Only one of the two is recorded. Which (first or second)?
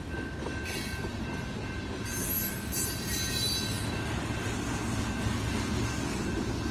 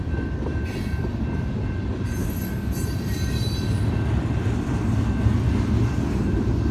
first